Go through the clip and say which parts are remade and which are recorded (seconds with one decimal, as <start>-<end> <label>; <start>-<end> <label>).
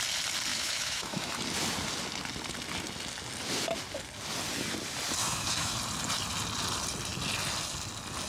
0.0-0.5 recorded; 0.5-1.3 remade; 1.3-5.2 recorded; 5.2-5.7 remade; 5.7-8.3 recorded